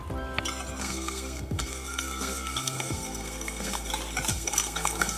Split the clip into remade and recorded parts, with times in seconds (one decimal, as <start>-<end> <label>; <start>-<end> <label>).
0.0-0.8 recorded; 0.8-3.9 remade; 3.9-4.3 recorded; 4.3-5.2 remade